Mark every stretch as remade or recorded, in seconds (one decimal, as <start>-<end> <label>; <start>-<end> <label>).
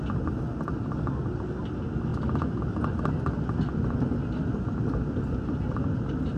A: 0.0-6.4 recorded